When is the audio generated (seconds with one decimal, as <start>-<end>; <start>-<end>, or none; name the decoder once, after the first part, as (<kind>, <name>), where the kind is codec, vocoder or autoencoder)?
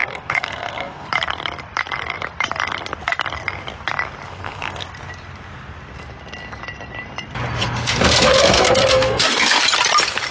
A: 0.0-1.1 (codec, SNAC); 4.3-4.9; 7.6-9.6